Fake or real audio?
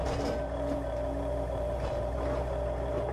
real